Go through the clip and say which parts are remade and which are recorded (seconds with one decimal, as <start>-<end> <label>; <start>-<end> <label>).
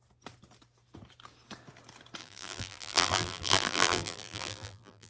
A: 0.0-2.2 recorded; 2.2-5.1 remade